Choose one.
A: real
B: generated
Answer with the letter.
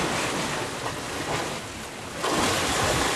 A